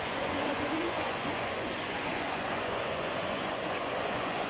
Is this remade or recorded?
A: remade